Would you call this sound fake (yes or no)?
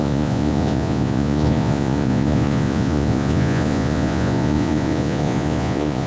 yes